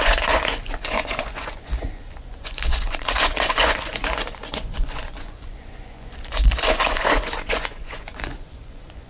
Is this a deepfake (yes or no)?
yes